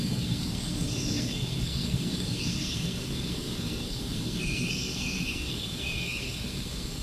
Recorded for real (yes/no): no